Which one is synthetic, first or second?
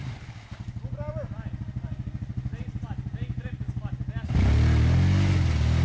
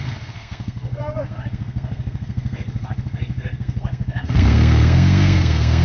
second